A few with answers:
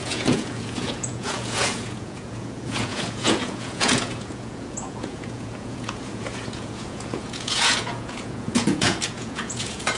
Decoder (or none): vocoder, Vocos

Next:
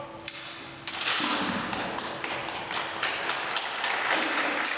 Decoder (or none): none